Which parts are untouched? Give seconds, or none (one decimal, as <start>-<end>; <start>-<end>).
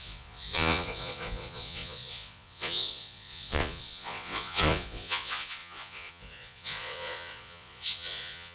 none